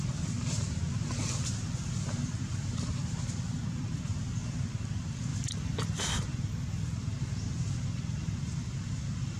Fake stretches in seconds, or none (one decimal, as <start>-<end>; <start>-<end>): 0.0-5.3; 6.2-9.4